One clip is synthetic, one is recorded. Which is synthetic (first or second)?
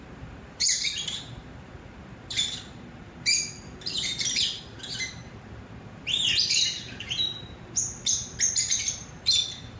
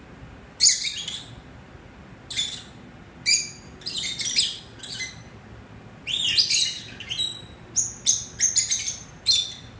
first